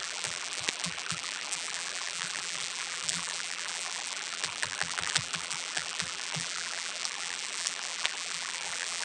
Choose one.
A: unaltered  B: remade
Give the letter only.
B